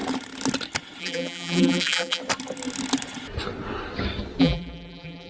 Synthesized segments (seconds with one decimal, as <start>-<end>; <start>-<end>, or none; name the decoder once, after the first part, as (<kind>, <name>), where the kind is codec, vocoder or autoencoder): 1.0-2.2 (vocoder, BigVGAN v2); 4.4-5.3